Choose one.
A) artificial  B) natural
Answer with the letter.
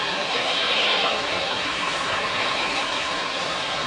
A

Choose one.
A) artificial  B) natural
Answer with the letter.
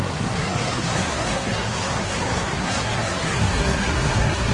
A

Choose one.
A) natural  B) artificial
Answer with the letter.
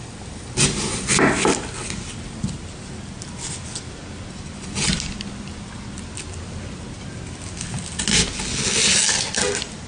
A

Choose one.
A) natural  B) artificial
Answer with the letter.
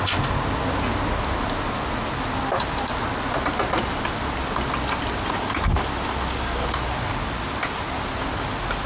A